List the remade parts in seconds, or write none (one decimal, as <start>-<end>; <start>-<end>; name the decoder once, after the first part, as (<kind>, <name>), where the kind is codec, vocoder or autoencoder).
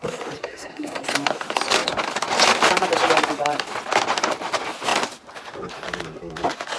0.4-1.0 (codec, SNAC)